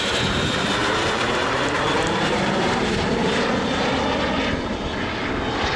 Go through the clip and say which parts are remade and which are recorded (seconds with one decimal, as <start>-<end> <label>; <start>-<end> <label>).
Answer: 0.0-0.8 recorded; 0.8-4.0 remade; 4.0-5.8 recorded